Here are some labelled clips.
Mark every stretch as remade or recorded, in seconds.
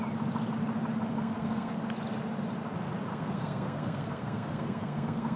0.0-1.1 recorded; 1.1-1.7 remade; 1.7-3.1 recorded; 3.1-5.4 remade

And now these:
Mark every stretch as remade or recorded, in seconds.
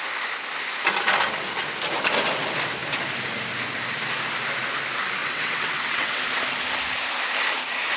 0.0-5.2 recorded; 5.2-6.2 remade; 6.2-8.0 recorded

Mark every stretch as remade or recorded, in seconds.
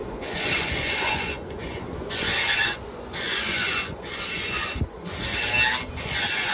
0.0-5.3 remade; 5.3-5.9 recorded; 5.9-6.5 remade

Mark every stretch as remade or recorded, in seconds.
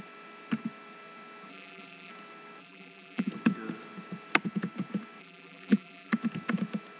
0.0-1.5 recorded; 1.5-2.1 remade; 2.1-2.6 recorded; 2.6-3.3 remade; 3.3-5.2 recorded; 5.2-6.1 remade; 6.1-7.0 recorded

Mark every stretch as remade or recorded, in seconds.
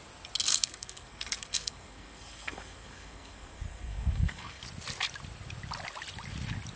0.0-0.5 recorded; 0.5-4.6 remade; 4.6-6.8 recorded